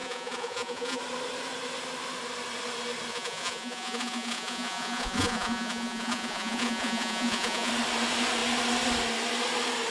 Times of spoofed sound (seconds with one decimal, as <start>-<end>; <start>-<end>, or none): 0.0-1.0; 3.1-7.7